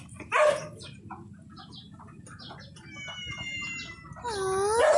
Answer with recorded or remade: recorded